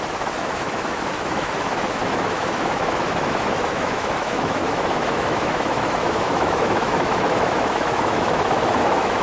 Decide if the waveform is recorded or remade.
remade